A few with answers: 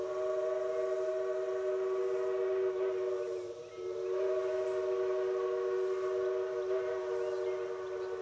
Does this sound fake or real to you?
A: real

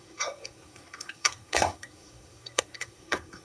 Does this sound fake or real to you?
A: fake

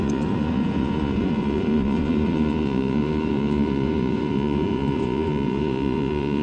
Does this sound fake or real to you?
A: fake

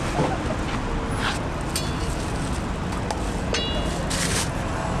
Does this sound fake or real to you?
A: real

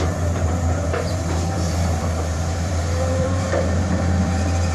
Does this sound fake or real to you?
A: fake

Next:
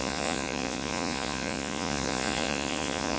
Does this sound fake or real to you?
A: fake